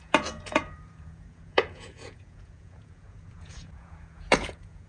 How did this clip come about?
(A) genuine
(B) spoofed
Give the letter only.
B